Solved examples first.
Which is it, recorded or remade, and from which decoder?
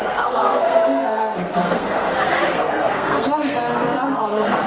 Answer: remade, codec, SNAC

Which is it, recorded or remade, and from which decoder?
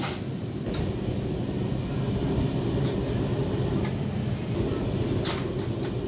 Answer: recorded